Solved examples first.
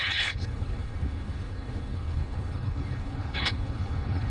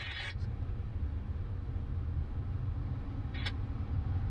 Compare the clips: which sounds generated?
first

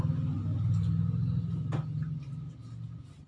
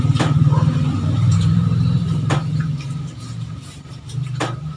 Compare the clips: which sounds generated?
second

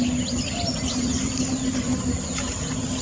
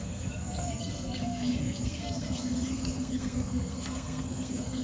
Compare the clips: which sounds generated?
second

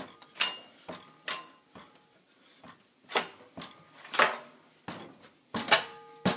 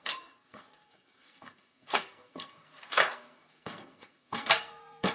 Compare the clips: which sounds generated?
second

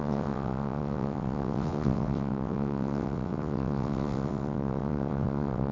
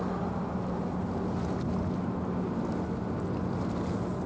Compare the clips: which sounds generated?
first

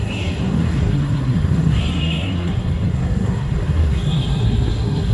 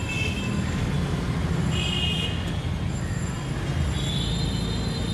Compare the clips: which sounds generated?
first